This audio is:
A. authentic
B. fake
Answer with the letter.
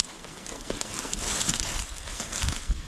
B